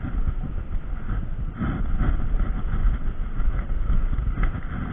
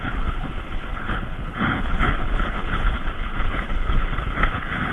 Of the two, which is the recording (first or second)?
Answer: first